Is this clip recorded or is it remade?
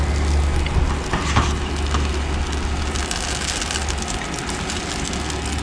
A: recorded